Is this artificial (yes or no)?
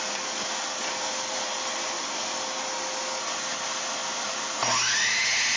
no